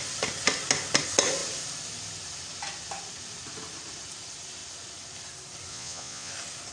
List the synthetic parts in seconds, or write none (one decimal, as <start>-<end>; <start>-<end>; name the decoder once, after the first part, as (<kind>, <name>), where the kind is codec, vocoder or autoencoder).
5.7-6.3 (vocoder, Vocos)